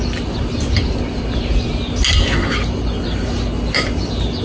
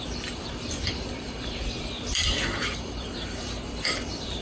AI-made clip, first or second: second